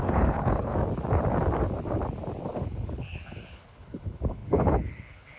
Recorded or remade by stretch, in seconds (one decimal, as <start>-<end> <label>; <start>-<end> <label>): 0.0-0.7 remade; 0.7-2.4 recorded; 2.4-5.4 remade